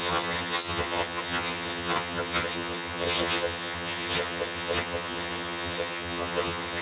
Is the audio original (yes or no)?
no